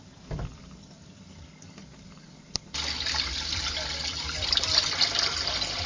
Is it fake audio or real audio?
real